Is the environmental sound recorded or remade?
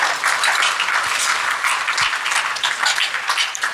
remade